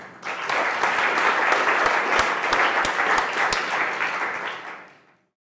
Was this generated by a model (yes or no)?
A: no